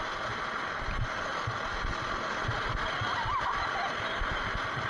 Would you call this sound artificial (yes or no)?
no